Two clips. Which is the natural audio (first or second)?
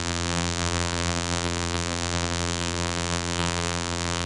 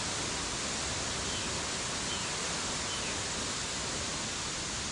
second